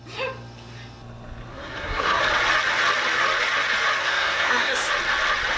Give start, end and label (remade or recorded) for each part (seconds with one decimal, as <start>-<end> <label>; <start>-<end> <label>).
0.0-1.5 recorded; 1.5-2.2 remade; 2.2-4.0 recorded; 4.0-4.9 remade; 4.9-5.6 recorded

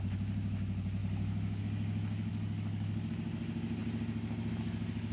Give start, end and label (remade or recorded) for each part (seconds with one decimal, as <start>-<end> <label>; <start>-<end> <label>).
0.0-1.0 recorded; 1.0-1.6 remade; 1.6-2.3 recorded; 2.3-3.1 remade; 3.1-5.1 recorded

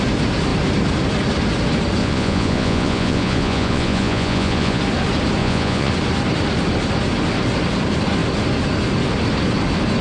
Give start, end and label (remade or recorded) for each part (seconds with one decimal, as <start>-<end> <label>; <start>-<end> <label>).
0.0-2.0 recorded; 2.0-4.8 remade; 4.8-5.4 recorded; 5.4-5.9 remade; 5.9-10.0 recorded

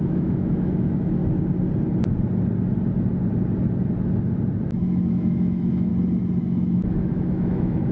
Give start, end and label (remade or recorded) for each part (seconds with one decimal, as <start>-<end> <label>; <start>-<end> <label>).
0.0-1.2 remade; 1.2-4.8 recorded; 4.8-5.9 remade; 5.9-6.4 recorded; 6.4-7.9 remade

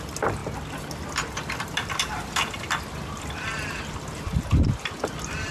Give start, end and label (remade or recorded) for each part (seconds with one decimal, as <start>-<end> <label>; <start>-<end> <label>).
0.0-5.5 recorded

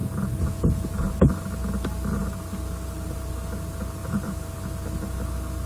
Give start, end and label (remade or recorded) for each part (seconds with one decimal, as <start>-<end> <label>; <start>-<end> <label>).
0.0-1.0 remade; 1.0-5.7 recorded

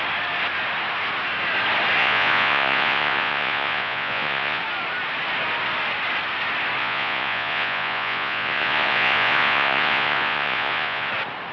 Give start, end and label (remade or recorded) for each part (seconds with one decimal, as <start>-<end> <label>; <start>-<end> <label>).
0.0-2.0 recorded; 2.0-4.6 remade; 4.6-6.8 recorded; 6.8-11.1 remade; 11.1-11.5 recorded

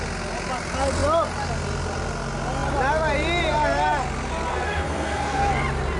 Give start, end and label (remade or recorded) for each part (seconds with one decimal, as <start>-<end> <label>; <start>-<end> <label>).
0.0-4.5 recorded; 4.5-5.5 remade; 5.5-6.0 recorded